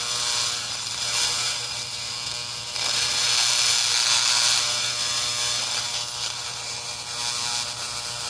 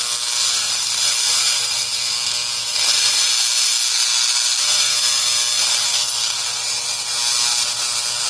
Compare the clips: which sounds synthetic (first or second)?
first